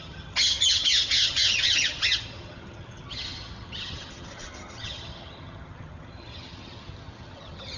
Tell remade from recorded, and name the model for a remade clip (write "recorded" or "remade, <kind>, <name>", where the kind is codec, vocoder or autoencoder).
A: remade, vocoder, HiFi-GAN